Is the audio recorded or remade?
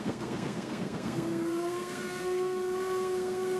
remade